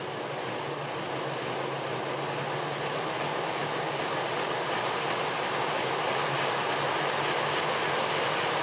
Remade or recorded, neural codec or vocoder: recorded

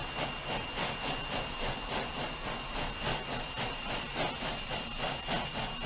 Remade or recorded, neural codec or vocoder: recorded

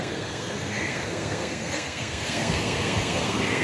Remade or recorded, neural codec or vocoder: remade, codec, SNAC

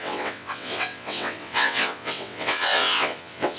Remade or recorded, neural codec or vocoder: remade, vocoder, WaveNeXt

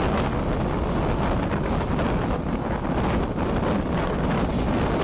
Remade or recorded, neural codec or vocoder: recorded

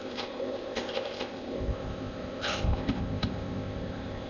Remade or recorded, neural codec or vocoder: remade, codec, ZipCodec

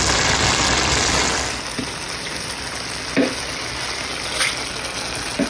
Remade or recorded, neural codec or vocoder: recorded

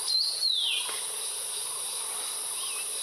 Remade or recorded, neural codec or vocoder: recorded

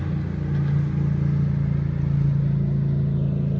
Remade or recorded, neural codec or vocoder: recorded